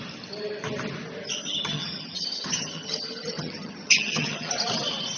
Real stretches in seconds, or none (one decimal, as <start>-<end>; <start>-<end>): 0.0-1.4; 4.5-5.2